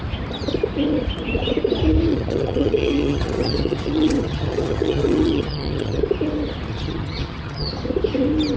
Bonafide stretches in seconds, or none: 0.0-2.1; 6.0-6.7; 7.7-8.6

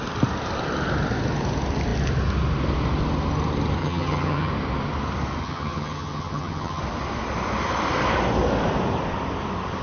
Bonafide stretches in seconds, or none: 0.0-3.8; 4.5-5.4; 6.8-9.8

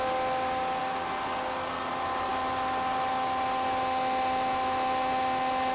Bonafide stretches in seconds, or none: 0.0-5.7

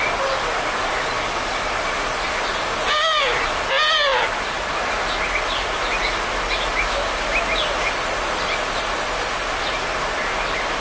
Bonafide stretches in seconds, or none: 0.0-10.8

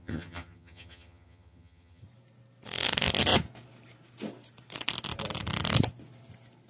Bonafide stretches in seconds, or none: 2.0-6.7

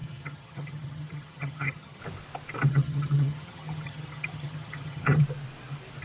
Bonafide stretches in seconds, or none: 2.0-2.7; 5.2-6.0

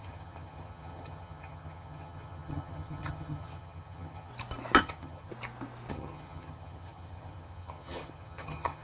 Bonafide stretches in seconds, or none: 4.3-4.8; 5.3-5.9

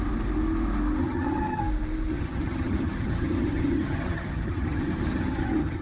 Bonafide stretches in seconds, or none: 0.0-1.0; 1.6-2.1